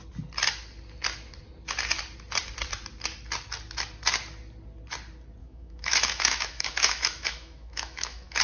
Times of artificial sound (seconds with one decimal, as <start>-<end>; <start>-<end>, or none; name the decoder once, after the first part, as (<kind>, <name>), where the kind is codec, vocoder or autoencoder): 5.4-8.4 (autoencoder, DAC-VAE)

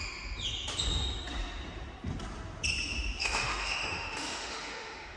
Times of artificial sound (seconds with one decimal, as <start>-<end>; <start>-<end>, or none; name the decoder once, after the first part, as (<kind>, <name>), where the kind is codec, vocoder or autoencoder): 3.2-5.2 (autoencoder, DAC-VAE)

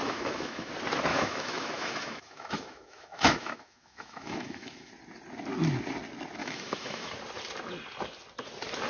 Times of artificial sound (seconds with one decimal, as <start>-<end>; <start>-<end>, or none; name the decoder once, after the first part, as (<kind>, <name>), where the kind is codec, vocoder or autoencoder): 0.0-0.7 (autoencoder, DAC-VAE); 1.1-4.9; 6.4-7.1

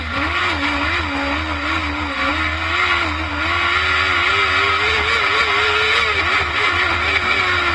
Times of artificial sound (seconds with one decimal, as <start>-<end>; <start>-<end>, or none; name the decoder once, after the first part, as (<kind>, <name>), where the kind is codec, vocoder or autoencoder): 0.4-1.0 (autoencoder, DAC-VAE)

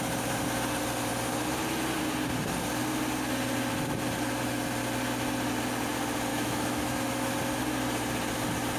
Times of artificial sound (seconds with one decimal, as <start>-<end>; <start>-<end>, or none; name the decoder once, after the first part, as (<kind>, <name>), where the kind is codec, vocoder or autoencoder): 6.3-7.4 (autoencoder, DAC-VAE)

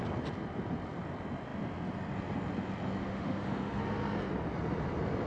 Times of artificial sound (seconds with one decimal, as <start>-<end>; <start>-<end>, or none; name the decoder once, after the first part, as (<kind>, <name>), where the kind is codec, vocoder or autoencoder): 3.0-3.8 (autoencoder, DAC-VAE)